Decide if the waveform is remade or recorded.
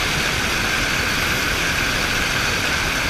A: recorded